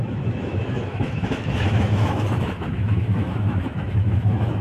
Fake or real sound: fake